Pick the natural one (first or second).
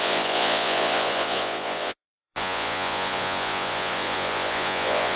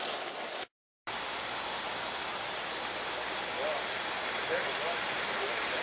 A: second